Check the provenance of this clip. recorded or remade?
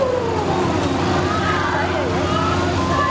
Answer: recorded